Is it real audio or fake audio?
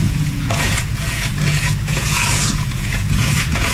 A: fake